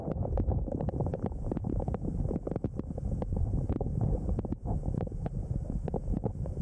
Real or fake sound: real